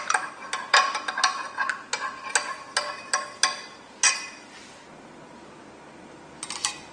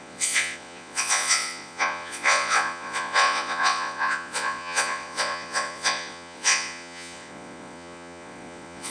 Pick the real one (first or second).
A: first